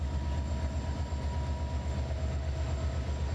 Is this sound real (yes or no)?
yes